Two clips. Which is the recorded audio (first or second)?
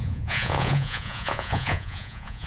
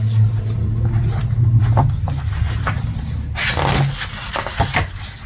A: second